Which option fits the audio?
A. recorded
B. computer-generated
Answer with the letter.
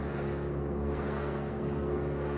B